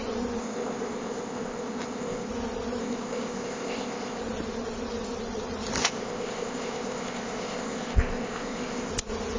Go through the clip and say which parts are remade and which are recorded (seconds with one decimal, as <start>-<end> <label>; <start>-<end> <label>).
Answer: 0.0-0.4 recorded; 0.4-2.3 remade; 2.3-2.8 recorded; 2.8-4.2 remade; 4.2-5.8 recorded; 5.8-8.9 remade; 8.9-9.4 recorded